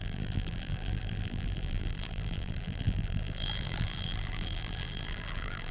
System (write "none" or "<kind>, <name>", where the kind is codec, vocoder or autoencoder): vocoder, BigVGAN v2